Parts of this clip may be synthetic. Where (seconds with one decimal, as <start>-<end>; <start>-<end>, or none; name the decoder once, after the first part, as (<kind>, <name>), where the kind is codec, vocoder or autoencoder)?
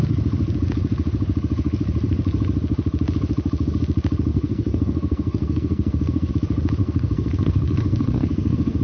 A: 4.3-6.3 (codec, SNAC); 6.8-8.8